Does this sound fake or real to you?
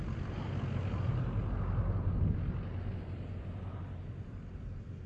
real